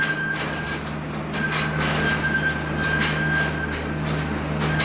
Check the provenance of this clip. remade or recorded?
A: recorded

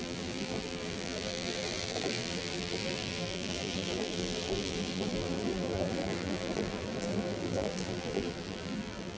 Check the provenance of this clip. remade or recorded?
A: remade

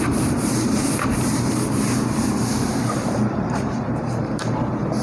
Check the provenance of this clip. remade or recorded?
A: remade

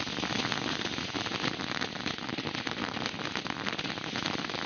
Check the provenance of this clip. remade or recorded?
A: recorded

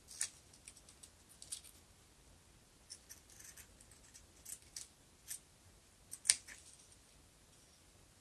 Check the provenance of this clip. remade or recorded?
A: recorded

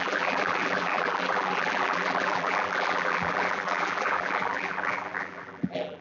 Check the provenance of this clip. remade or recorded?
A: remade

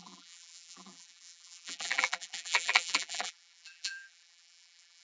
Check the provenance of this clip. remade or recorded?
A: remade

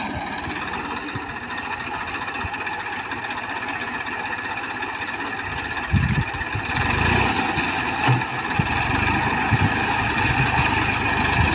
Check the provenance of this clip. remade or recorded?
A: recorded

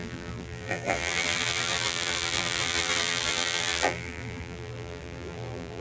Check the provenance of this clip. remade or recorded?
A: remade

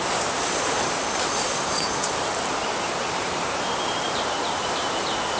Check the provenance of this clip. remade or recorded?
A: remade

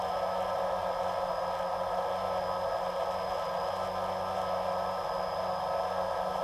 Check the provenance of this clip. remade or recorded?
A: recorded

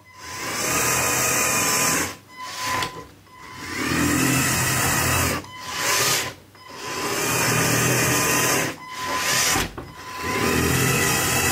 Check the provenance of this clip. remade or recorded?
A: recorded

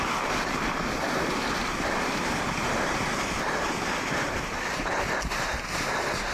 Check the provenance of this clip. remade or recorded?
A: recorded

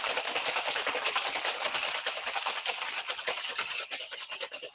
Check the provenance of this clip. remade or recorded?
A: recorded